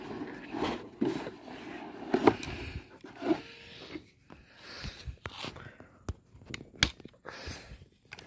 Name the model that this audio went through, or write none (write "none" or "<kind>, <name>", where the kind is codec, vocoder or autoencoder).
none